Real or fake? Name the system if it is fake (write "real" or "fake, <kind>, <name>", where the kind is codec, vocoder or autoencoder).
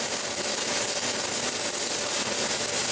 real